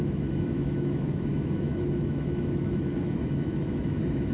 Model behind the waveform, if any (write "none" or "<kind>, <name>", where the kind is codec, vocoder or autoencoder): autoencoder, DAC-VAE